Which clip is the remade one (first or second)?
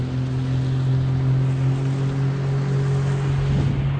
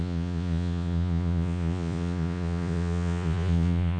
second